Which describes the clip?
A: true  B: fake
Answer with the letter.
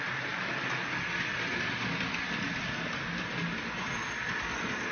A